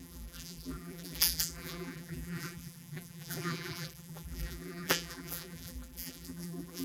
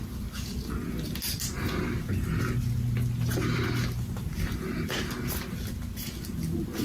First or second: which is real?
second